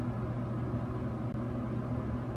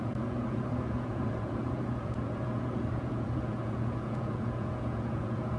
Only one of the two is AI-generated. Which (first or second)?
second